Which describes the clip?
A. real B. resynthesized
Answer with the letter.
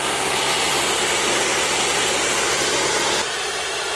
A